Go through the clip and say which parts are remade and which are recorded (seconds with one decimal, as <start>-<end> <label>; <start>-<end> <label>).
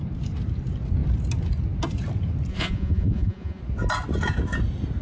0.0-2.5 recorded; 2.5-3.6 remade; 3.6-5.0 recorded